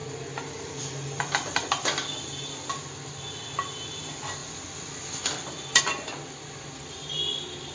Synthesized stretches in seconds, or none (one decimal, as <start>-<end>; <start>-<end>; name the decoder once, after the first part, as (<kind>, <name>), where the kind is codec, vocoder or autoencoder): 0.0-2.7 (vocoder, BigVGAN v2)